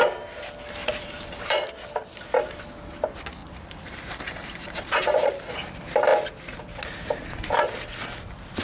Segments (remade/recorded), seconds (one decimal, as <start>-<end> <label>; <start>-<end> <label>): 0.0-0.8 recorded; 0.8-1.7 remade; 1.7-3.4 recorded; 3.4-5.5 remade; 5.5-8.6 recorded